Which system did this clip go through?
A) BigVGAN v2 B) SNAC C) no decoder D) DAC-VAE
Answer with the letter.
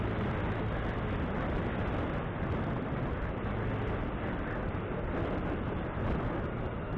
C